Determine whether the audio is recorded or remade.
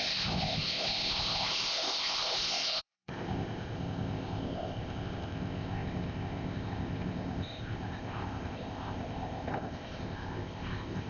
remade